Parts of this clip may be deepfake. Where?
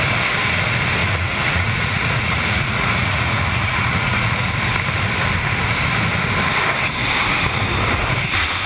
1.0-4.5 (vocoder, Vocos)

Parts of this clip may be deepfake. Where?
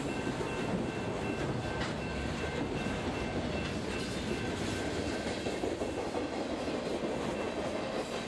none